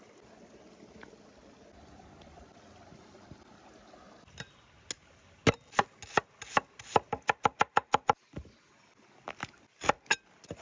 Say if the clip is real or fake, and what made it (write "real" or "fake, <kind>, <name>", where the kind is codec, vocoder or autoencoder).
real